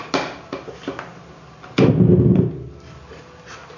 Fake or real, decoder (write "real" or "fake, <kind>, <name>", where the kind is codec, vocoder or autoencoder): real